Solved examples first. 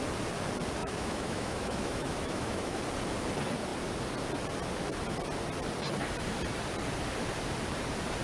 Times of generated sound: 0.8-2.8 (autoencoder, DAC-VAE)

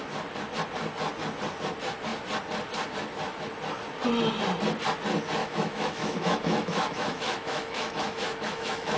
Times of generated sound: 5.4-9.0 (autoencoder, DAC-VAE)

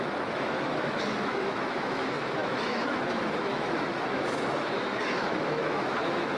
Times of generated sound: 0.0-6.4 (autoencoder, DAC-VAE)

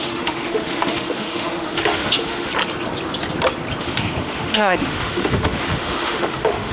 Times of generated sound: 0.0-2.5 (autoencoder, DAC-VAE); 3.8-6.7